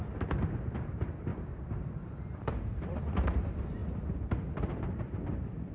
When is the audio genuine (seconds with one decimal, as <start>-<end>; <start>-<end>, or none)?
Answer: 3.8-5.7